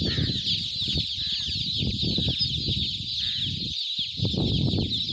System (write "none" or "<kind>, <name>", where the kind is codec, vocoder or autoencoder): none